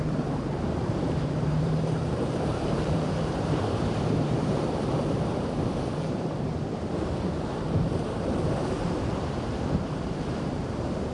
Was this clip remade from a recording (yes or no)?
yes